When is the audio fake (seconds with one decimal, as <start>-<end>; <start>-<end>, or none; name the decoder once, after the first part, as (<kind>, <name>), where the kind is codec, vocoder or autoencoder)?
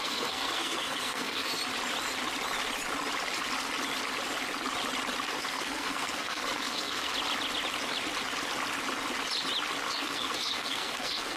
0.0-1.6 (codec, SNAC); 5.4-7.1; 9.9-11.4